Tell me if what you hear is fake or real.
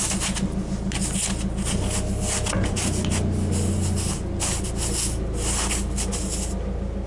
real